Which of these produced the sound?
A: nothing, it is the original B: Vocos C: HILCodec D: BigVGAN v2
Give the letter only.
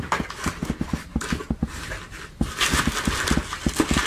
A